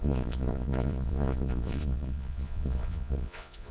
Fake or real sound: fake